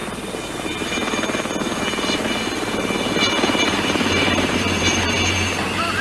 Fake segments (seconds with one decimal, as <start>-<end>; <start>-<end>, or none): 3.6-6.0